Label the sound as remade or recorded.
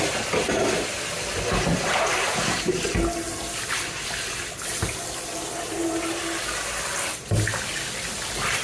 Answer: recorded